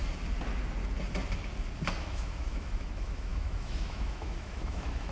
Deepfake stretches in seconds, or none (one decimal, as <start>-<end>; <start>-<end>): 2.0-5.1